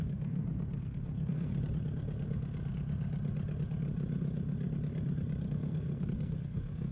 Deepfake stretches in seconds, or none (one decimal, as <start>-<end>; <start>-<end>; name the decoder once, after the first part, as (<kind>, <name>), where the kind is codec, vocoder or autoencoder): 0.0-1.5 (codec, SNAC); 5.5-6.9